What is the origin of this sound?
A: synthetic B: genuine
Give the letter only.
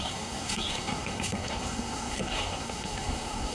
A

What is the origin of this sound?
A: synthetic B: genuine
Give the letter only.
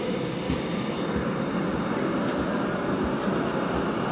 B